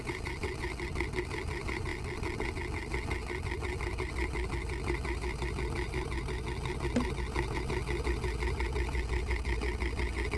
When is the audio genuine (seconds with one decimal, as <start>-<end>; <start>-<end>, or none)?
0.0-10.4